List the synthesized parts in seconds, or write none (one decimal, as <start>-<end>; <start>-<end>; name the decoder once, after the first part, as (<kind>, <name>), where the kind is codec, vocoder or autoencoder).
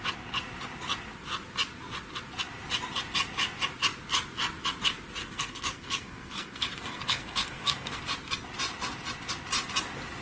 5.2-8.0 (codec, SNAC)